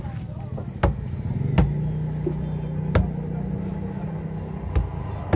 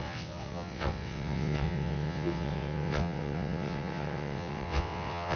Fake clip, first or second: second